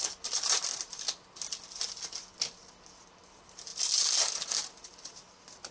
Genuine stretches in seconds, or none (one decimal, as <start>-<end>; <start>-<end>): 0.0-5.7